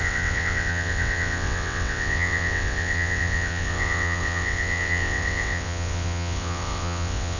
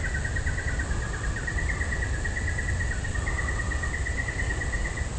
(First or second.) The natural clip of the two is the second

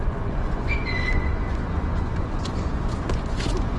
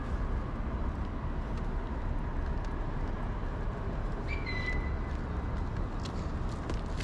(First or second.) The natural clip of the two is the second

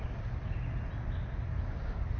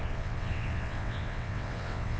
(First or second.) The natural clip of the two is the first